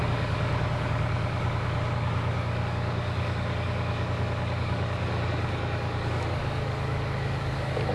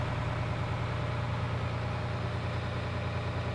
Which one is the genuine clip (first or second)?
second